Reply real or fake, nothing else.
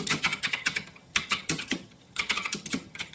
fake